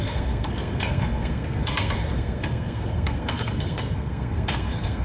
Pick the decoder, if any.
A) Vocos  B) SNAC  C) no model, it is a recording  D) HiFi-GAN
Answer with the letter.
B